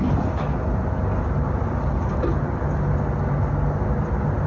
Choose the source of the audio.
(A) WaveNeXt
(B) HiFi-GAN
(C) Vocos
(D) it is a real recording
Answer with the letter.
D